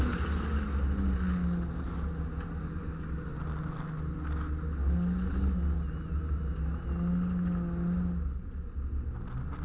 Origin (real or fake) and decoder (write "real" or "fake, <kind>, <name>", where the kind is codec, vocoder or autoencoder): real